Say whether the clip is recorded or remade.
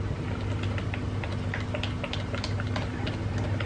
recorded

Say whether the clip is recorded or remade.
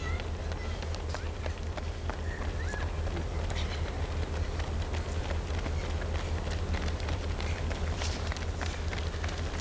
recorded